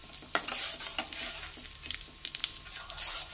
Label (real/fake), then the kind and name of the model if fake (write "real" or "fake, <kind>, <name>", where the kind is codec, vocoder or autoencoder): real